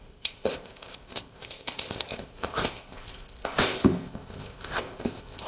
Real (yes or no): no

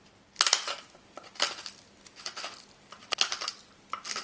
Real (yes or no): yes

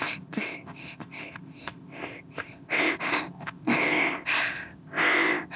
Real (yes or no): no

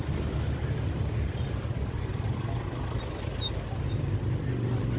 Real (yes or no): yes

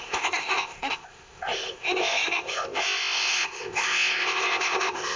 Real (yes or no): no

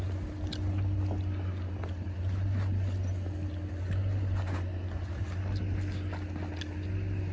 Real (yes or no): yes